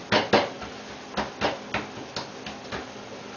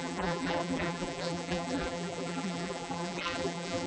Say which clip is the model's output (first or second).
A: second